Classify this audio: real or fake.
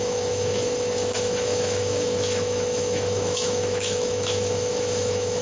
fake